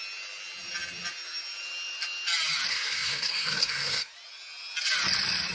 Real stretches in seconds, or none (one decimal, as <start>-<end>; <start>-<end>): 0.0-2.7; 4.1-5.5